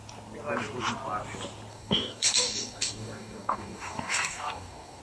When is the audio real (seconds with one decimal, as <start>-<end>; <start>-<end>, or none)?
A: 0.0-1.7